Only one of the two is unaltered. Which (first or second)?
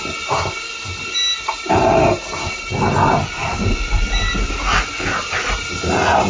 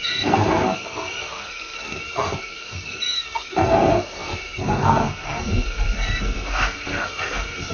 first